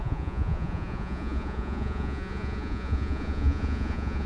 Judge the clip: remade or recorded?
remade